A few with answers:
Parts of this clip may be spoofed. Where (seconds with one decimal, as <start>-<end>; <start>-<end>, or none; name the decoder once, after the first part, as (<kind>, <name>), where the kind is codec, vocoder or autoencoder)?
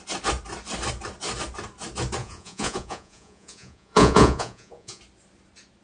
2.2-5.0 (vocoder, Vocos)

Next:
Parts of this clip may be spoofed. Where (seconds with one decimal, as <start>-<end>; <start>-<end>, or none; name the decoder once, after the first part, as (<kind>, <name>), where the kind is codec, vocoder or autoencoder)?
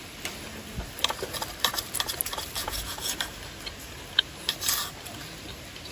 2.6-3.1 (vocoder, Vocos)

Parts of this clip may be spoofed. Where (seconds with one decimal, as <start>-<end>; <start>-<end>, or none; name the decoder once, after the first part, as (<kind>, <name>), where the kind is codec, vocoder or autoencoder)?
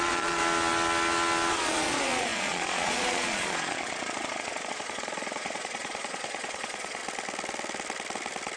0.0-0.4 (vocoder, Vocos); 1.5-7.0